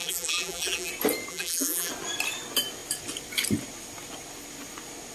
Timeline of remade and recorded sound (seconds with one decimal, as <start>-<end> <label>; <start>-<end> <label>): 0.0-0.9 remade; 0.9-1.3 recorded; 1.3-1.9 remade; 1.9-5.1 recorded